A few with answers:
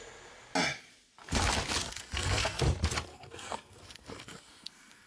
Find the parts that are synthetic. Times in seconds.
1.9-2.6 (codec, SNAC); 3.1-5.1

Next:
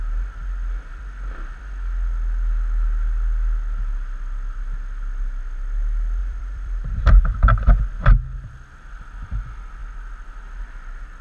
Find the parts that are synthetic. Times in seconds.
6.2-7.2 (vocoder, BigVGAN v2)

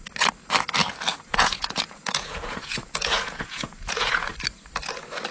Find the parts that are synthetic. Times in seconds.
1.1-4.3 (vocoder, Vocos)

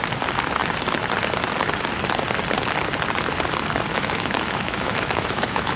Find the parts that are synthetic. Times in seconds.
3.9-5.8 (autoencoder, DAC-VAE)

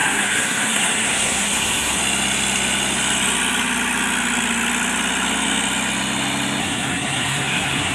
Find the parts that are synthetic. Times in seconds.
0.0-2.0 (codec, SNAC); 6.6-7.9

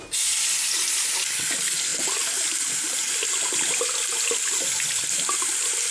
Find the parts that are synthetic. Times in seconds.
none

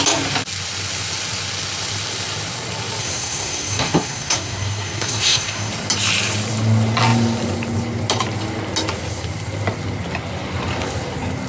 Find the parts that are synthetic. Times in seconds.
3.0-5.7 (codec, SNAC)